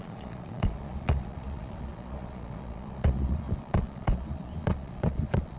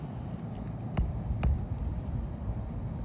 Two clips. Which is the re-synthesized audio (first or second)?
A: first